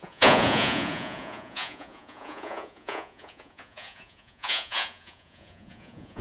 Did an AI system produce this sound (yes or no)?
yes